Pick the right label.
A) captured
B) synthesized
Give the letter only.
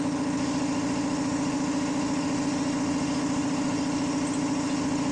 A